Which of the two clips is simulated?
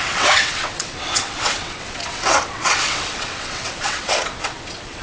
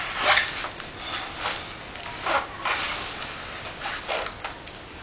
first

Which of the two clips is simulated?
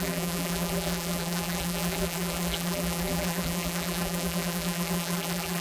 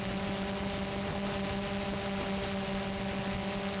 first